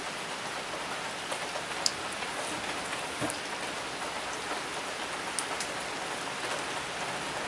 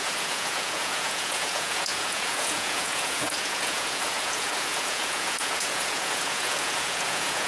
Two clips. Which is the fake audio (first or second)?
second